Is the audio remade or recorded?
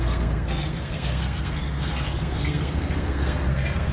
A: remade